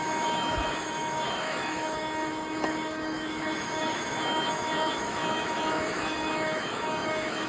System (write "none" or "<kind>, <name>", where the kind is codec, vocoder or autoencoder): autoencoder, DAC-VAE